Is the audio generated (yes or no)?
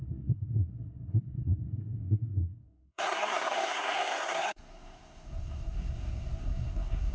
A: yes